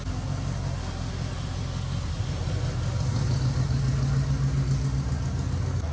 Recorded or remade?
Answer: recorded